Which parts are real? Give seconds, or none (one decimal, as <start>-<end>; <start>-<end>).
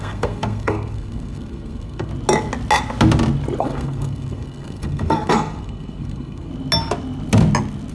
2.1-3.6; 6.5-7.9